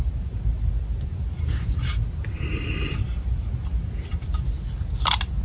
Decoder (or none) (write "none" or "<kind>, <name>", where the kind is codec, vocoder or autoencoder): none